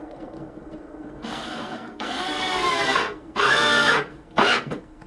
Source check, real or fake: fake